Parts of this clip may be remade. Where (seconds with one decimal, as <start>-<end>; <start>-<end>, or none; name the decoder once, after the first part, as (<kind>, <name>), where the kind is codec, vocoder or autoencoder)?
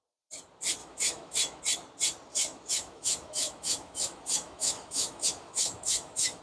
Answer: 0.8-1.6 (autoencoder, DAC-VAE); 2.3-6.4